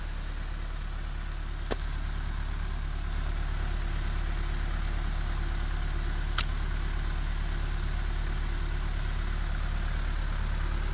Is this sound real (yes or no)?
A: yes